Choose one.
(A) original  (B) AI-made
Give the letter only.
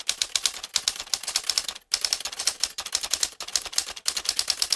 A